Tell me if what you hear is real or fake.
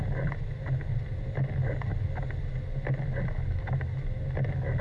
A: real